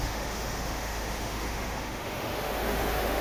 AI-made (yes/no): yes